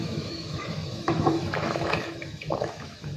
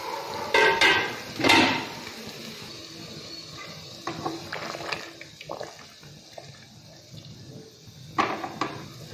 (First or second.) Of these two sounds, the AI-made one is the first